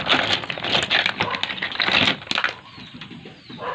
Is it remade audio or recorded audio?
recorded